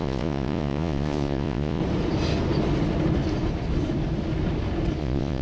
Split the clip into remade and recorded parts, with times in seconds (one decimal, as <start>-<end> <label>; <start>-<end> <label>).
0.0-1.8 remade; 1.8-5.0 recorded; 5.0-5.4 remade